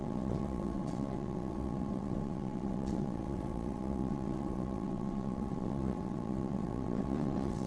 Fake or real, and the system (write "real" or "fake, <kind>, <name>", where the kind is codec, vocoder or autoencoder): fake, vocoder, WaveNeXt